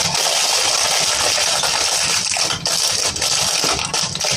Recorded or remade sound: recorded